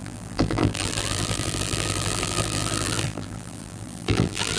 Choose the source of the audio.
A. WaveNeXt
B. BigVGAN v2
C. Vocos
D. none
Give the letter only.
B